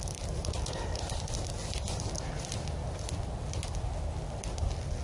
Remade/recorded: recorded